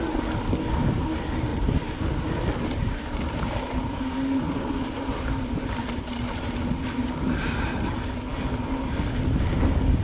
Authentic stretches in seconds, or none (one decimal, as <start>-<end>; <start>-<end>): 0.0-1.5; 4.0-10.0